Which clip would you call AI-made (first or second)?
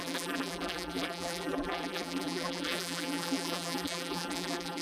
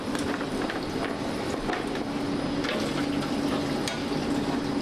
first